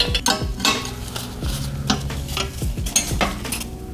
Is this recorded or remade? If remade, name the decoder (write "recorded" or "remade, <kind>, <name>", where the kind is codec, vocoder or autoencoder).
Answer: recorded